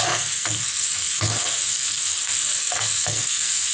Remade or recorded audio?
remade